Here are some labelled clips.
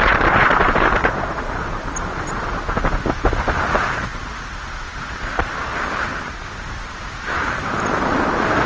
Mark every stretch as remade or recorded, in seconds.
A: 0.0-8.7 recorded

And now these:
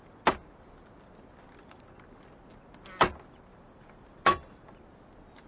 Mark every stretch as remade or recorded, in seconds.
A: 0.0-3.5 recorded; 3.5-4.9 remade; 4.9-5.5 recorded

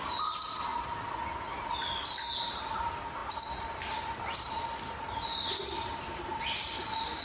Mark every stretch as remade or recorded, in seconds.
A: 0.0-7.2 recorded

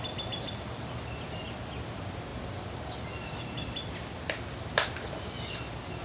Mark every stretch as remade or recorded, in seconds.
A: 0.0-6.0 recorded

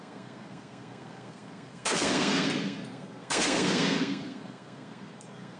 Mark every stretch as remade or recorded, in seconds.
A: 0.0-5.6 remade

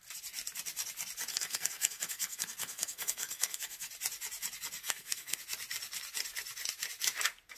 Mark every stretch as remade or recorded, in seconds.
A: 0.0-1.3 recorded; 1.3-3.9 remade; 3.9-4.8 recorded; 4.8-5.4 remade; 5.4-7.6 recorded